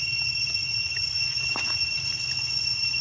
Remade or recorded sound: recorded